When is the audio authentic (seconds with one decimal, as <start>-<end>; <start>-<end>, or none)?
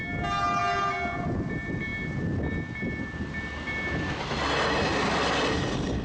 0.0-6.0